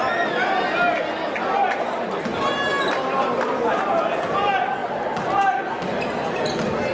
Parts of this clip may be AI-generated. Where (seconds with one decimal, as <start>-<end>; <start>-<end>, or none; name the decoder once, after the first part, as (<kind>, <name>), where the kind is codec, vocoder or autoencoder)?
none